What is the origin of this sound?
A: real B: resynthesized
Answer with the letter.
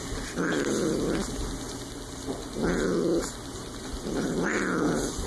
A